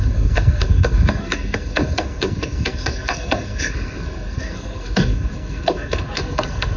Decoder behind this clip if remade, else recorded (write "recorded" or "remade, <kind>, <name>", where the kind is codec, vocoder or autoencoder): remade, codec, SNAC